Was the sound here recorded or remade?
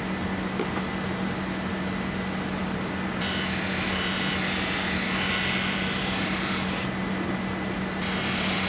recorded